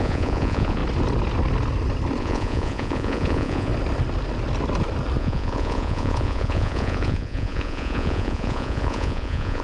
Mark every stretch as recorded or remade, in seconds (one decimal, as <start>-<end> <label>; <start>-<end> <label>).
0.0-0.8 remade; 0.8-2.2 recorded; 2.2-3.7 remade; 3.7-5.2 recorded; 5.2-9.6 remade